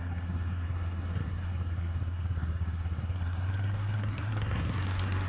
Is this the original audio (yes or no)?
no